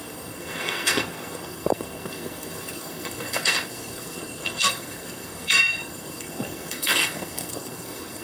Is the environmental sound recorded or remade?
remade